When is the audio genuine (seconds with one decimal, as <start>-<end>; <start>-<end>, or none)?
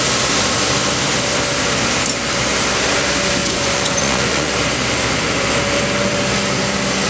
0.0-3.4; 4.5-7.1